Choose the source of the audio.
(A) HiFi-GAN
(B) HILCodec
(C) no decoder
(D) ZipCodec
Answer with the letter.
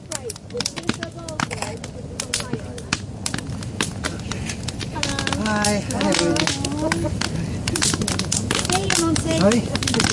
C